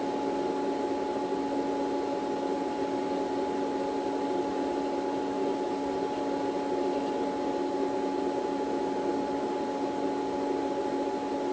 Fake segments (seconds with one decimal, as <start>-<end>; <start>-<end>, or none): none